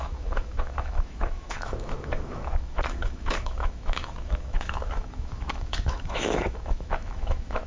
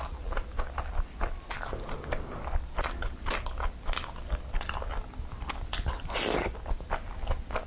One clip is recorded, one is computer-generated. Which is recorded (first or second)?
second